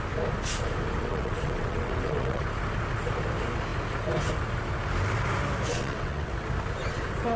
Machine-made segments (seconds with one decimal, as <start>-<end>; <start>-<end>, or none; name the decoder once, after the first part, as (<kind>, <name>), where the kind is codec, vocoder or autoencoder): 1.0-2.4 (vocoder, WaveNeXt); 5.7-6.3